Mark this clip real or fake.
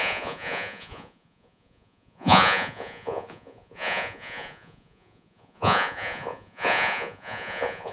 fake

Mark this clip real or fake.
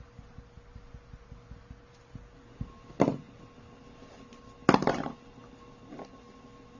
real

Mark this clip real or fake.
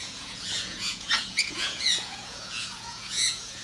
fake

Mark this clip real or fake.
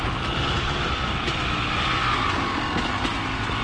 real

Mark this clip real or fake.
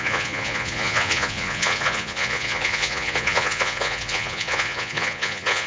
fake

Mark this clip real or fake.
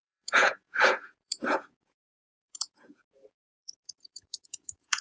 fake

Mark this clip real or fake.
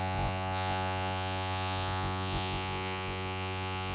fake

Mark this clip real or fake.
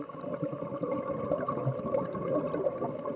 real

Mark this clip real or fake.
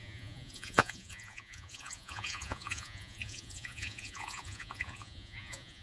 fake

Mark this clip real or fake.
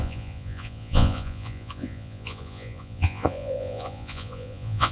fake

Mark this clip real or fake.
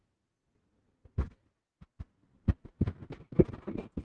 real